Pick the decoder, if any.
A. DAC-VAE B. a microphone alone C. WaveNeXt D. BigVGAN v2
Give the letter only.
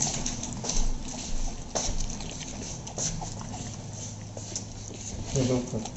B